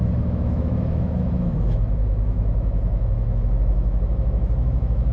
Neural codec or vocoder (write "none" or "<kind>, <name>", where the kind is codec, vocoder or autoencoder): autoencoder, DAC-VAE